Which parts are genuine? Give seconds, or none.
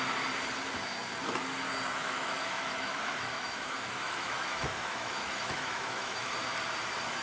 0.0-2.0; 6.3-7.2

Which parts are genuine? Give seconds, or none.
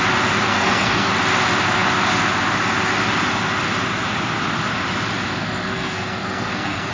0.0-0.5; 1.1-5.4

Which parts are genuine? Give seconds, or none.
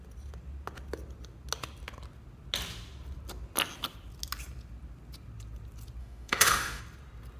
0.0-6.0; 6.8-7.4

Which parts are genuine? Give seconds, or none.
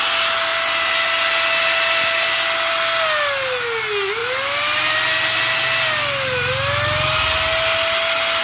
0.0-8.4